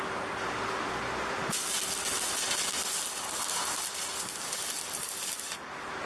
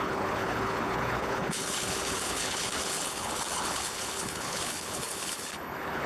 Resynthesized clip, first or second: second